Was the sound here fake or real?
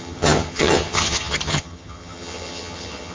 fake